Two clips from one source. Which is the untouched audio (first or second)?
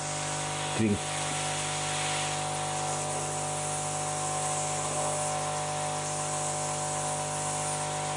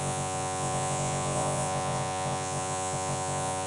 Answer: first